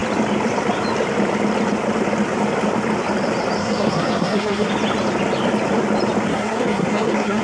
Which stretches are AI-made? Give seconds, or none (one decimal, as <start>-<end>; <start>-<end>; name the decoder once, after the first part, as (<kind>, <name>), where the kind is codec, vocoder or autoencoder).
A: 3.6-4.7 (codec, SNAC); 6.3-7.4